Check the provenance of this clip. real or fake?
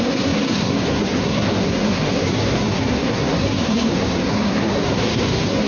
fake